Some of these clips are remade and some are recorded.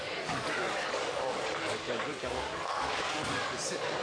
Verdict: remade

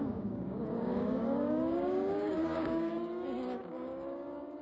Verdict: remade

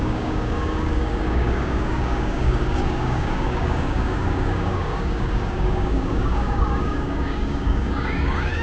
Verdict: remade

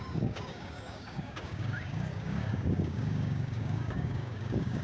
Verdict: remade